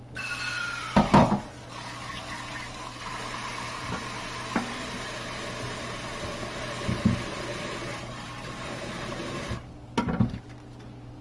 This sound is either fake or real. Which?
real